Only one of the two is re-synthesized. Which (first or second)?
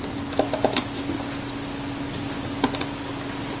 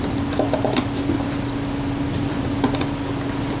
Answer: second